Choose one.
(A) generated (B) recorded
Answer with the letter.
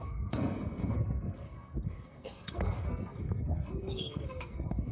A